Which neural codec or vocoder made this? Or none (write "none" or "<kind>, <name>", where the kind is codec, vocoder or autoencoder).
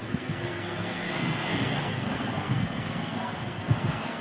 codec, SNAC